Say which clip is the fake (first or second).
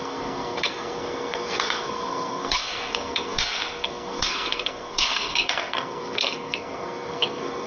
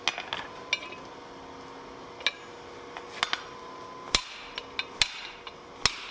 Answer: first